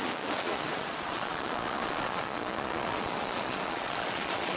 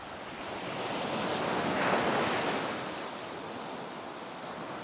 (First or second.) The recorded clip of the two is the second